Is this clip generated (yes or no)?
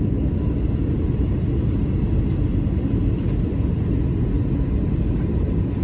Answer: no